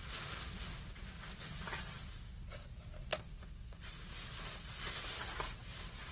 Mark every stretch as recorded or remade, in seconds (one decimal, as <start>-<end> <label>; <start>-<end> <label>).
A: 0.0-3.1 recorded; 3.1-3.8 remade; 3.8-6.1 recorded

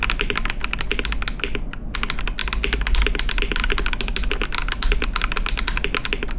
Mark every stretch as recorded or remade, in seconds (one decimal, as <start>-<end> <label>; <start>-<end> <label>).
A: 0.0-6.4 recorded

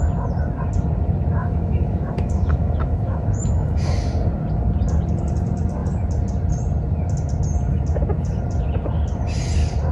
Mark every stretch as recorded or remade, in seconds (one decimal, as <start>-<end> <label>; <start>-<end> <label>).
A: 0.0-1.4 recorded; 1.4-3.9 remade; 3.9-9.9 recorded

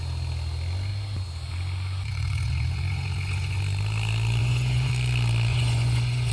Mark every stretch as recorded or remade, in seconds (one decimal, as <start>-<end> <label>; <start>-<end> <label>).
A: 0.0-2.1 recorded; 2.1-3.6 remade; 3.6-4.4 recorded; 4.4-4.9 remade; 4.9-5.5 recorded; 5.5-6.3 remade

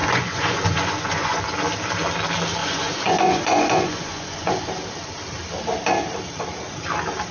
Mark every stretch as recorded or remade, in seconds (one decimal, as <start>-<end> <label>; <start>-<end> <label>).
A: 0.0-1.4 remade; 1.4-2.6 recorded; 2.6-4.7 remade; 4.7-7.3 recorded

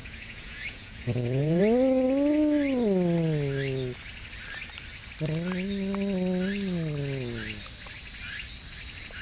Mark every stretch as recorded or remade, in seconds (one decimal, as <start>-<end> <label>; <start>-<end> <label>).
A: 0.0-1.6 remade; 1.6-9.2 recorded

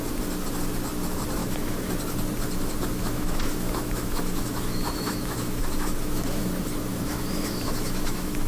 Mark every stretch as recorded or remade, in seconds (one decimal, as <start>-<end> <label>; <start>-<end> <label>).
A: 0.0-1.4 recorded; 1.4-1.9 remade; 1.9-3.0 recorded; 3.0-6.5 remade; 6.5-6.9 recorded; 6.9-8.5 remade

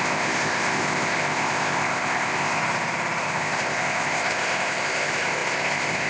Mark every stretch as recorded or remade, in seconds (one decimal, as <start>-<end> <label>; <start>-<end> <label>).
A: 0.0-2.6 remade; 2.6-3.2 recorded; 3.2-6.1 remade